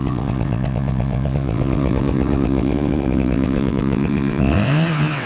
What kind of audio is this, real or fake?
fake